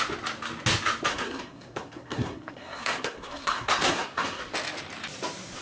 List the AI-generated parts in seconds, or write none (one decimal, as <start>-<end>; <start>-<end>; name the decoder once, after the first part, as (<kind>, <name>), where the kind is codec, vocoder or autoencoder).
1.1-4.4 (codec, SNAC)